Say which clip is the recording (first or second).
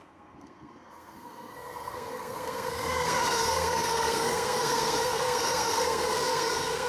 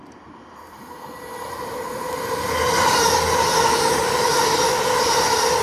second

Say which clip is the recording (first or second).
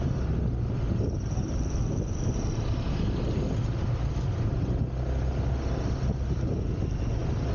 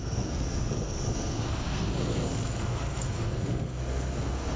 first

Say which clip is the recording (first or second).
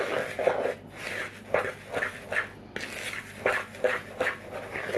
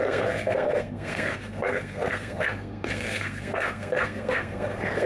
first